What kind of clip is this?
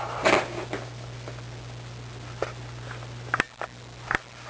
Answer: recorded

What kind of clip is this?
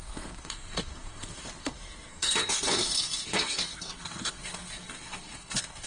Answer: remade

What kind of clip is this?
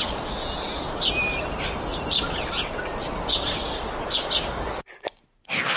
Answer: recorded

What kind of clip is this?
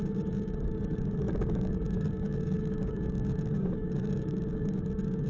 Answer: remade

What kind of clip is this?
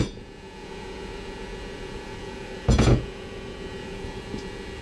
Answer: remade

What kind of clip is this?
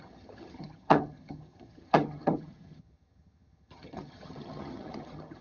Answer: remade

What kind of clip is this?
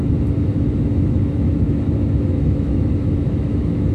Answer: remade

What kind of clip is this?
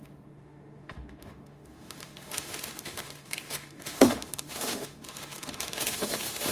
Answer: remade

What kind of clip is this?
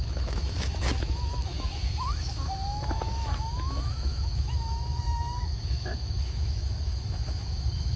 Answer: remade